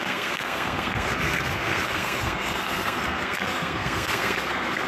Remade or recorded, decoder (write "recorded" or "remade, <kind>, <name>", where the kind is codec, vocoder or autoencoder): remade, codec, SNAC